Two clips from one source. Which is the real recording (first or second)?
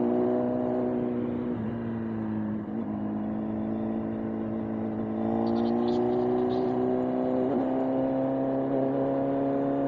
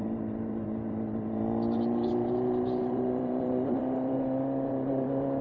first